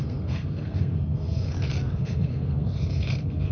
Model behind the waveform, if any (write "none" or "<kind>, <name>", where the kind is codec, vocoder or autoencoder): codec, SNAC